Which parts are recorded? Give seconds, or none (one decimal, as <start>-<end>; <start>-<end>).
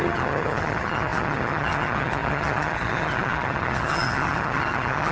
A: none